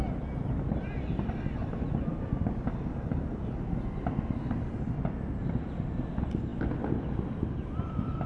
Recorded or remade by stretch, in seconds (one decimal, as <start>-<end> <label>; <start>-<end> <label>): 0.0-8.3 recorded